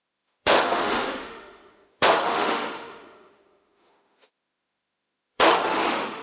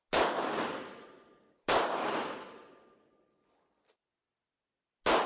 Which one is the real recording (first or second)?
second